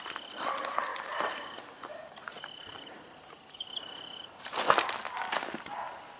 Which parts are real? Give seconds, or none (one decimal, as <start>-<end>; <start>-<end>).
0.0-0.9; 4.6-6.2